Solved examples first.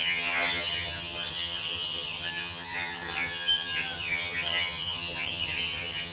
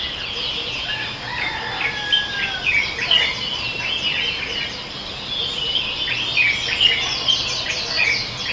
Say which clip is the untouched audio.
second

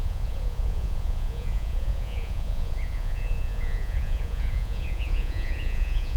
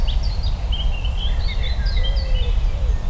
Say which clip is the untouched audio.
second